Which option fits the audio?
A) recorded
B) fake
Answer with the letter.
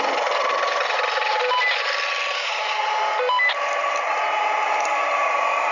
A